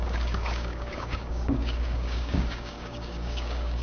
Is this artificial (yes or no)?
yes